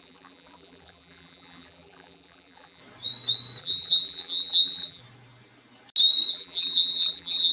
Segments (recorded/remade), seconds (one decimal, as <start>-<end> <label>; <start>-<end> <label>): 0.0-2.8 remade; 2.8-3.6 recorded; 3.6-5.0 remade; 5.0-6.3 recorded; 6.3-7.5 remade